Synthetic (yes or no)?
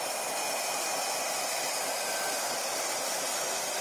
no